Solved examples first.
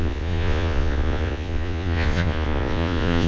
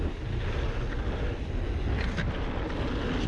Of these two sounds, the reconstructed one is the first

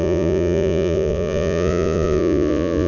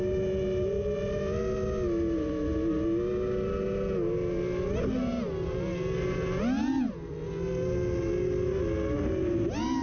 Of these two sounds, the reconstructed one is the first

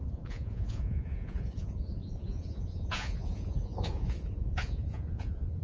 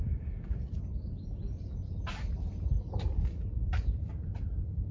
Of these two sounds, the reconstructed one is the first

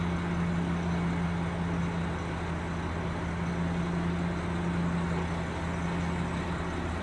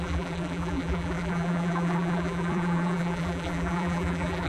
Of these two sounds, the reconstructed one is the second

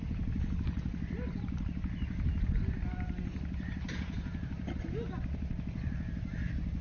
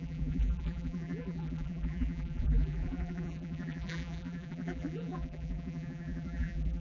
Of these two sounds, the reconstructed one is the second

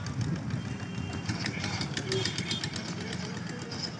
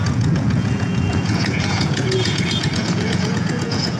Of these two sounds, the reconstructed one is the second